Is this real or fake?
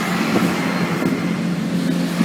real